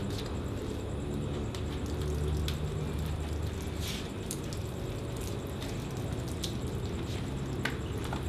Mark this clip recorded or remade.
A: recorded